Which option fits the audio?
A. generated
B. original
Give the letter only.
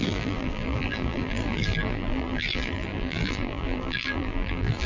A